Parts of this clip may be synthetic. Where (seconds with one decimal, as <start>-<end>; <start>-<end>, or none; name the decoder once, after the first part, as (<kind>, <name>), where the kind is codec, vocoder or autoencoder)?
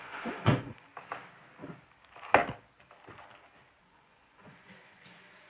0.0-0.9 (vocoder, Vocos); 3.8-5.5